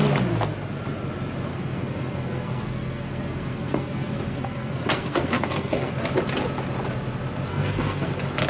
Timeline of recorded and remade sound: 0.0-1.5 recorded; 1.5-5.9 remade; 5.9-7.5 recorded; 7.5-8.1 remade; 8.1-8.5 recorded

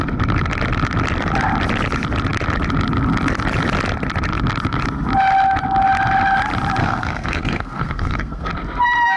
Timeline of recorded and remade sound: 0.0-6.8 recorded; 6.8-8.5 remade; 8.5-9.2 recorded

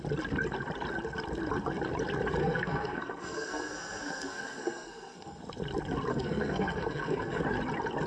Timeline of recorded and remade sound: 0.0-2.4 recorded; 2.4-5.4 remade; 5.4-6.1 recorded; 6.1-7.4 remade; 7.4-8.1 recorded

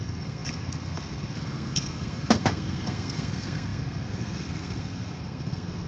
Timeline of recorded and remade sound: 0.0-5.9 remade